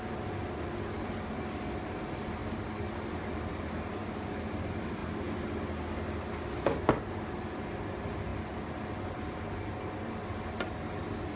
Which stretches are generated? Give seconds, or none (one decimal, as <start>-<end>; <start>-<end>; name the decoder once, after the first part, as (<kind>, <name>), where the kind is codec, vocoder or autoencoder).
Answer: none